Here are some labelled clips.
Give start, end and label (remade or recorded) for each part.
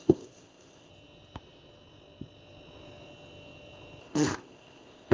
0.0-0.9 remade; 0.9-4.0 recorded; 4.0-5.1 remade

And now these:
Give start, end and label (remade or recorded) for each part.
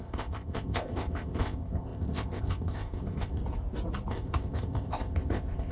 0.0-3.4 remade; 3.4-4.1 recorded; 4.1-5.7 remade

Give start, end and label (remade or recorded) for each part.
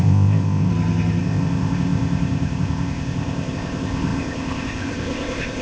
0.0-0.7 remade; 0.7-1.2 recorded; 1.2-5.6 remade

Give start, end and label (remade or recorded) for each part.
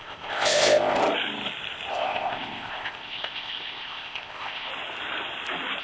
0.0-1.0 remade; 1.0-1.9 recorded; 1.9-4.7 remade; 4.7-5.8 recorded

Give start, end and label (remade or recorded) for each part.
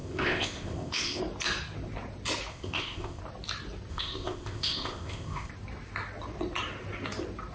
0.0-1.2 remade; 1.2-2.5 recorded; 2.5-3.2 remade; 3.2-3.9 recorded; 3.9-5.5 remade; 5.5-7.5 recorded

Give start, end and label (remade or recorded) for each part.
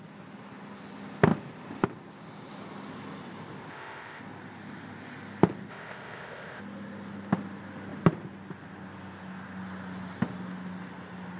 0.0-3.7 recorded; 3.7-4.2 remade; 4.2-5.7 recorded; 5.7-6.6 remade; 6.6-11.4 recorded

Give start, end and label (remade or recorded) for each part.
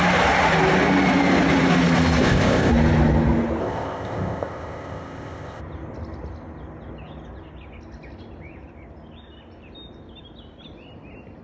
0.0-2.2 recorded; 2.2-2.7 remade; 2.7-3.6 recorded; 3.6-5.6 remade; 5.6-11.4 recorded